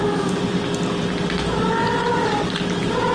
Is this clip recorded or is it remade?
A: recorded